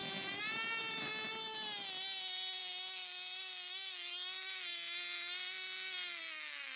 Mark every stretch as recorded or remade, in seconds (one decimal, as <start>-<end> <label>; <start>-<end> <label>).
0.0-6.8 recorded